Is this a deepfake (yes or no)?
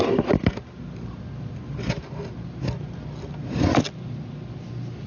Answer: no